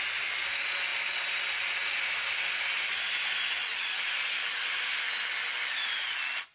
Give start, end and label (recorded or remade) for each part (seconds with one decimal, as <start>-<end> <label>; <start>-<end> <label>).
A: 0.0-6.5 recorded